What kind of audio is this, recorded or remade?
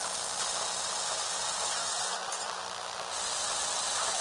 recorded